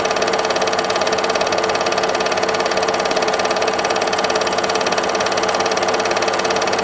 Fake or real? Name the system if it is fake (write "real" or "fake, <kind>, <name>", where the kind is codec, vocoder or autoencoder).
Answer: fake, vocoder, Vocos